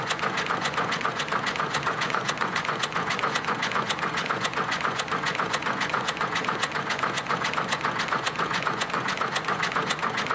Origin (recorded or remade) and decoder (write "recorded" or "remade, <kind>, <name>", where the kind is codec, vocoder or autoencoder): remade, vocoder, Vocos